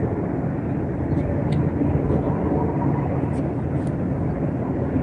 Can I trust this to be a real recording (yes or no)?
yes